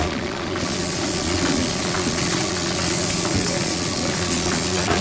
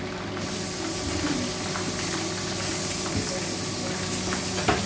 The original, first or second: second